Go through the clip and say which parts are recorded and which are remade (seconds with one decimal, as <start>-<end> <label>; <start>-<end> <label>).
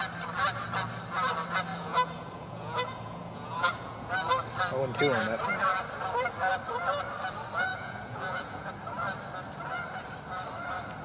0.0-1.7 recorded; 1.7-4.1 remade; 4.1-7.7 recorded; 7.7-8.7 remade; 8.7-11.0 recorded